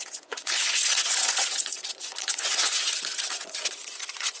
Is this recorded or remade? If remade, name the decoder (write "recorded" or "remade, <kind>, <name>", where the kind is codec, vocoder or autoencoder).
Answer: remade, vocoder, Vocos